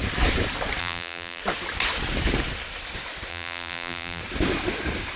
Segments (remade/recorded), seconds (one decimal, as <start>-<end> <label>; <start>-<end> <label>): 0.0-0.8 recorded; 0.8-1.4 remade; 1.4-3.3 recorded; 3.3-4.2 remade; 4.2-5.2 recorded